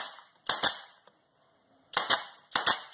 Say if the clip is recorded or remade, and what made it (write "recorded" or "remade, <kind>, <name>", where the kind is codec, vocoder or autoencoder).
recorded